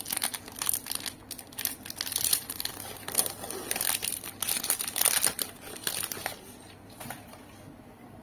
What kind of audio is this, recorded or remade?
recorded